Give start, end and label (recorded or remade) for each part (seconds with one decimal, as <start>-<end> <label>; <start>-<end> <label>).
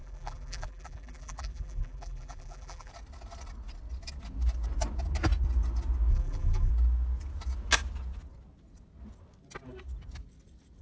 0.0-2.9 remade; 2.9-6.1 recorded; 6.1-6.7 remade; 6.7-10.8 recorded